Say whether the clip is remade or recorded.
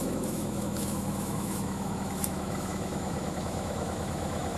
remade